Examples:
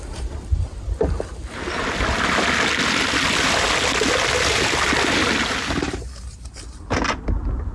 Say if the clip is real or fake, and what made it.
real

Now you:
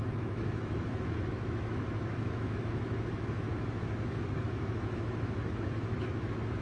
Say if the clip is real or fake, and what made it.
fake, autoencoder, DAC-VAE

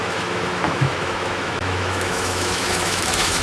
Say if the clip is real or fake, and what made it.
fake, autoencoder, DAC-VAE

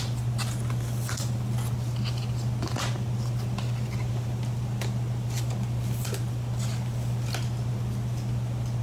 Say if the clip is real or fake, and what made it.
real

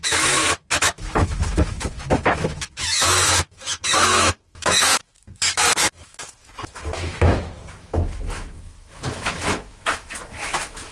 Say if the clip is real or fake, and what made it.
fake, autoencoder, DAC-VAE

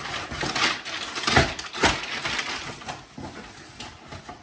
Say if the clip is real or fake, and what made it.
real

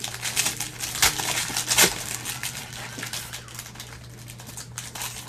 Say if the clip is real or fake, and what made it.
real